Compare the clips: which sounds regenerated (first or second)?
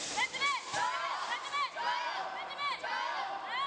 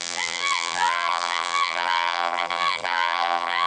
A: second